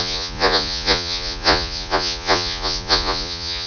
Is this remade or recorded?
remade